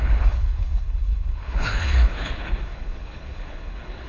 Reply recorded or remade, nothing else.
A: remade